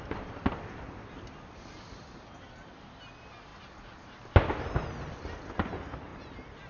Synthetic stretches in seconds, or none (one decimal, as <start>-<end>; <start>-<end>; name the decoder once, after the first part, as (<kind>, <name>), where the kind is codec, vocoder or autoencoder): none